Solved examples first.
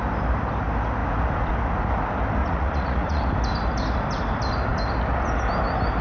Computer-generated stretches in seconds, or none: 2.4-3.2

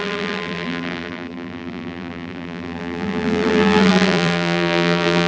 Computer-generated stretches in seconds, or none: 0.0-5.3